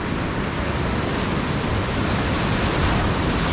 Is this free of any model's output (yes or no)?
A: yes